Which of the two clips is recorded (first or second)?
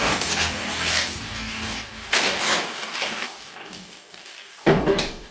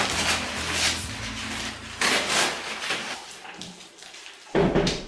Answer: second